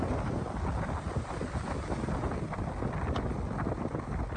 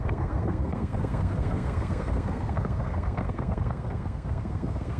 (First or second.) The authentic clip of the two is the first